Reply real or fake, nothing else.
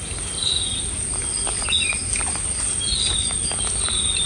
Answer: real